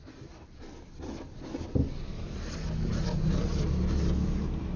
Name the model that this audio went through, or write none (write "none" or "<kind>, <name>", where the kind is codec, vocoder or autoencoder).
none